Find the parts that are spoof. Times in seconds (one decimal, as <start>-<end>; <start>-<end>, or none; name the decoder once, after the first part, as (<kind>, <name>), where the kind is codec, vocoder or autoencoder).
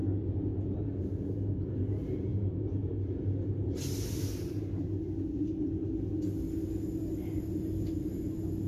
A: none